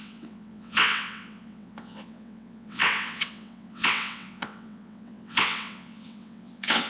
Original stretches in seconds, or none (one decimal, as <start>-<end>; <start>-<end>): none